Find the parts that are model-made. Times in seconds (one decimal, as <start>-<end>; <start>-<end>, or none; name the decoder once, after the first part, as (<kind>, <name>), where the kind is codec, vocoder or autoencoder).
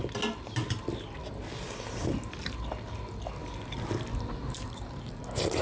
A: none